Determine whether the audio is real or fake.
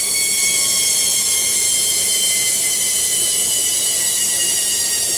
fake